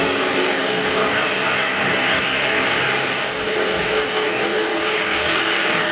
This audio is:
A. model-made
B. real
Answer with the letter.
A